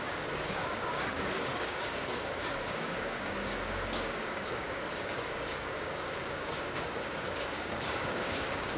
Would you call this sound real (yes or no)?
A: no